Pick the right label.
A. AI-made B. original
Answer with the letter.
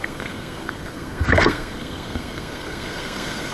A